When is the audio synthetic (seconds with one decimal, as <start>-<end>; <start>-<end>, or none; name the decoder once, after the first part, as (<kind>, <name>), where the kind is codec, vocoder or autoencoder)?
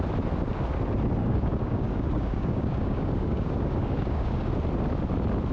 1.2-4.5 (codec, DAC)